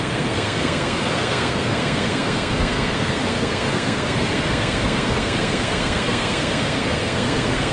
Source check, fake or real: fake